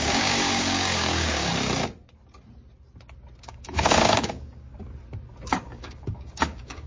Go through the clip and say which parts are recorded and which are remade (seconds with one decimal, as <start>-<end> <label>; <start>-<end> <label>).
0.0-1.5 remade; 1.5-3.4 recorded; 3.4-4.7 remade; 4.7-5.5 recorded; 5.5-6.9 remade